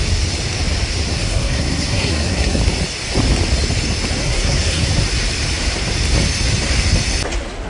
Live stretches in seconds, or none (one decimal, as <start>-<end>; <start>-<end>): 0.0-1.1; 2.6-4.2; 4.9-7.7